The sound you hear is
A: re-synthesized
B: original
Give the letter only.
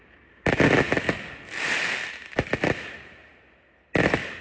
B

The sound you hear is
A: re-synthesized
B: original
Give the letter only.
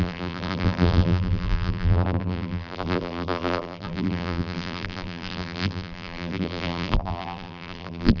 A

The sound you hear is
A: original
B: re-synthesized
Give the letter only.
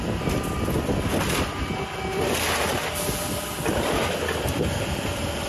B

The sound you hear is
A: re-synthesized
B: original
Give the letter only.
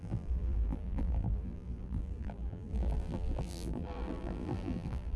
A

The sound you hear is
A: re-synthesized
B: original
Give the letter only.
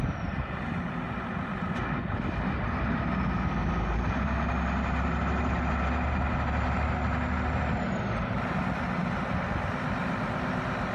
B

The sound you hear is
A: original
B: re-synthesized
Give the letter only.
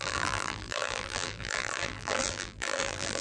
B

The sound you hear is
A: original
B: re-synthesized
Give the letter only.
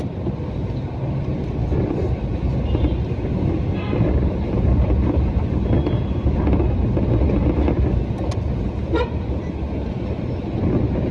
A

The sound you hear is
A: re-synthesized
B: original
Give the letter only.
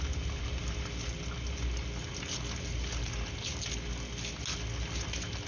B